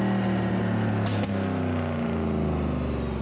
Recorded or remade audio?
recorded